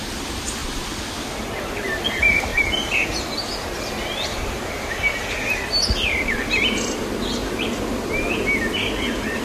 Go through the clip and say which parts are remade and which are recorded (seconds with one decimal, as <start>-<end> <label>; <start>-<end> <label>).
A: 0.0-9.4 recorded